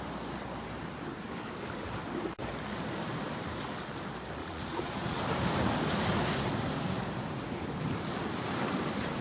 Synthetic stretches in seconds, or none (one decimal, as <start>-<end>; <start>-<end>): 4.4-5.2